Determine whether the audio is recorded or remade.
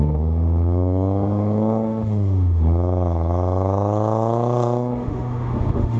remade